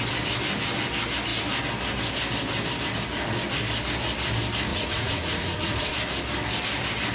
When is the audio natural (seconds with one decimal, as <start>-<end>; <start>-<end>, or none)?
0.0-4.7; 5.9-7.1